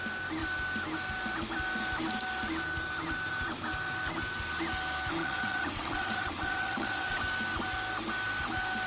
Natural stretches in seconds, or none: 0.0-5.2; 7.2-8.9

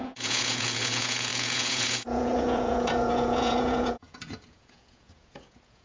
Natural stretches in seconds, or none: none

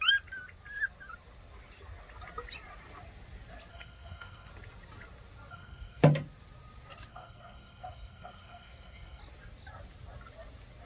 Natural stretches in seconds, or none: 0.0-3.7; 4.5-5.5; 6.0-7.1; 9.2-10.9

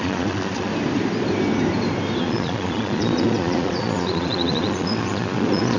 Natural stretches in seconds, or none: 0.7-2.2

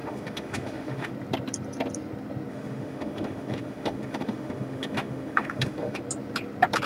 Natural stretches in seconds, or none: 1.1-2.5; 6.0-6.9

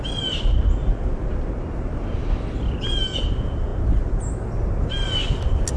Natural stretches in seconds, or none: 0.0-5.8